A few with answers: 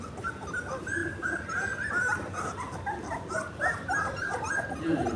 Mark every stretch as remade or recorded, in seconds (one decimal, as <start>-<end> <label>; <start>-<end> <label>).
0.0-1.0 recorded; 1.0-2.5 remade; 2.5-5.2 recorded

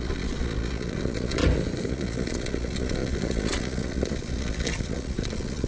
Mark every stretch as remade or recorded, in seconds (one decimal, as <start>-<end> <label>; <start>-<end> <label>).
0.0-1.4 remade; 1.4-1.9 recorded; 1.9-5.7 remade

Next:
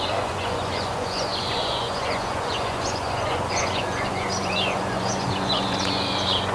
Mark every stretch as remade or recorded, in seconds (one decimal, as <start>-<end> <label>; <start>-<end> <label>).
0.0-6.5 remade